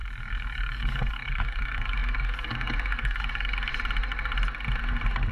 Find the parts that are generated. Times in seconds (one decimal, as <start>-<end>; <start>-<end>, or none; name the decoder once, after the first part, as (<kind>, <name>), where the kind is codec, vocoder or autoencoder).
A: 0.0-3.7 (codec, DAC)